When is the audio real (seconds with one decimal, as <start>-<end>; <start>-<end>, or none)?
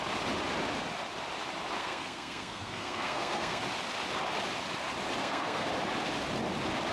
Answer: 0.0-1.8; 3.6-5.2; 5.7-6.9